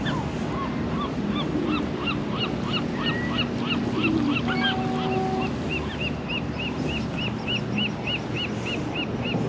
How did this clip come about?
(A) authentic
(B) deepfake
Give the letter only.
A